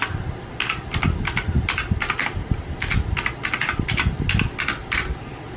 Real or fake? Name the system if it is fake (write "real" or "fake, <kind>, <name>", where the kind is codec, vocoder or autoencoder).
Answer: real